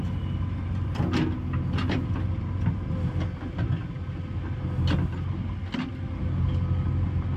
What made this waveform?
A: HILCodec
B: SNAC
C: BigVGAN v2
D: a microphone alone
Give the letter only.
D